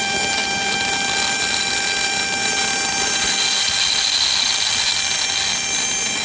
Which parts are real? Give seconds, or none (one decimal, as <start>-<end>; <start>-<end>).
0.0-6.2